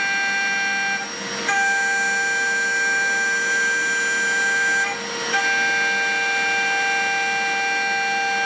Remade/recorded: recorded